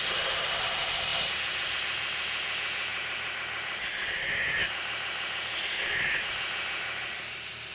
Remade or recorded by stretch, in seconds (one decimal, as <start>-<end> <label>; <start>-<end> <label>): 0.0-1.1 remade; 1.1-1.7 recorded; 1.7-4.6 remade; 4.6-7.7 recorded

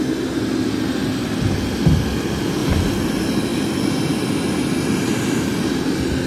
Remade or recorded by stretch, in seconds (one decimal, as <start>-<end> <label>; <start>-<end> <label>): 0.0-2.6 recorded; 2.6-3.1 remade; 3.1-3.5 recorded; 3.5-5.7 remade; 5.7-6.3 recorded

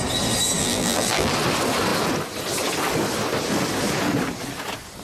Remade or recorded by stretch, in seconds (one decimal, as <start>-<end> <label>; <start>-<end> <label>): 0.0-0.6 recorded; 0.6-1.3 remade; 1.3-5.0 recorded

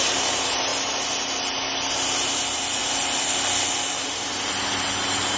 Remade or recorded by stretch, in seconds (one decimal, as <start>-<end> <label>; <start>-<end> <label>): 0.0-0.7 remade; 0.7-1.9 recorded; 1.9-2.8 remade; 2.8-3.8 recorded; 3.8-5.4 remade

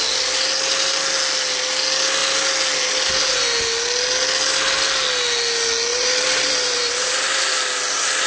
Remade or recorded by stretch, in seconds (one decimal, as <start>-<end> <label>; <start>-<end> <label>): 0.0-5.9 recorded; 5.9-7.1 remade; 7.1-8.3 recorded

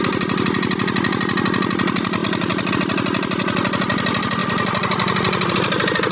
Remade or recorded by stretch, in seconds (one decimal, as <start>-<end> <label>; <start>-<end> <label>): 0.0-2.2 recorded; 2.2-2.7 remade; 2.7-6.1 recorded